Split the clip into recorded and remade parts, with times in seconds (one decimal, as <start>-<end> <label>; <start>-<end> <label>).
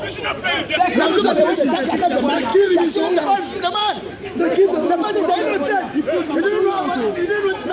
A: 0.0-3.8 recorded; 3.8-4.4 remade; 4.4-7.7 recorded